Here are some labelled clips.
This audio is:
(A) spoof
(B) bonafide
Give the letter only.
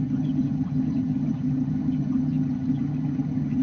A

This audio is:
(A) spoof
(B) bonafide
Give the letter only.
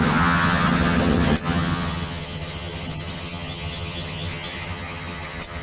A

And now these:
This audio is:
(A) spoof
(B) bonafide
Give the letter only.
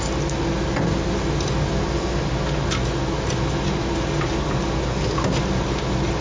B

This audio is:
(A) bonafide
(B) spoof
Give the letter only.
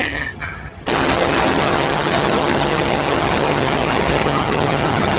B